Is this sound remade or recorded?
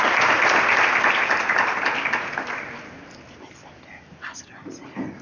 recorded